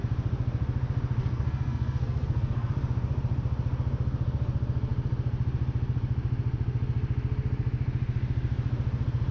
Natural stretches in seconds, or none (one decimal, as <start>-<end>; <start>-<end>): 0.0-1.2; 2.7-9.3